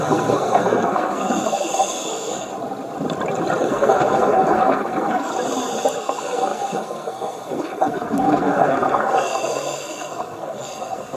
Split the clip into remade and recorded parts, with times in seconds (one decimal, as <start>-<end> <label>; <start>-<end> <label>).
0.0-2.5 remade; 2.5-3.6 recorded; 3.6-5.3 remade; 5.3-6.0 recorded; 6.0-11.2 remade